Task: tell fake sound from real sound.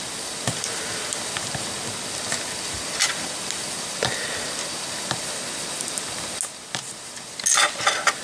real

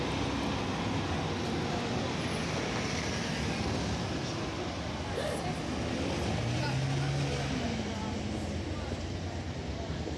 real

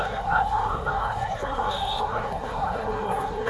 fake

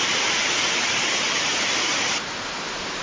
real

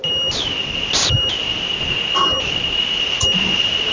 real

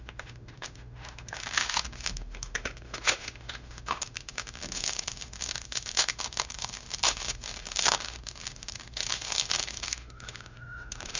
fake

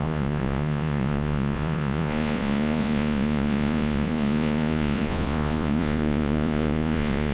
fake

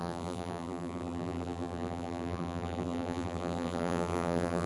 fake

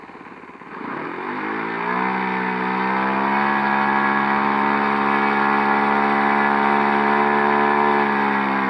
real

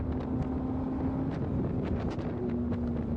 real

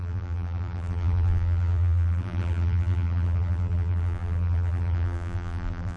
fake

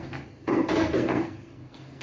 fake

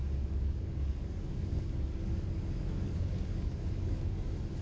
fake